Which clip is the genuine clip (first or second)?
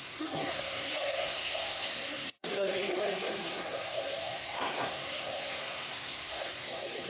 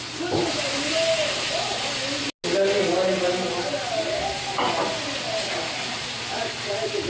second